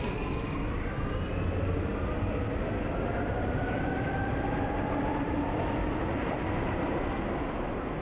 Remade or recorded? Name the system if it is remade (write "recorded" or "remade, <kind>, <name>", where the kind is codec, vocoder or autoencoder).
recorded